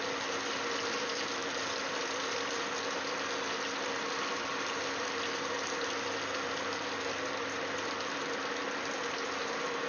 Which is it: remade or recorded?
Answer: remade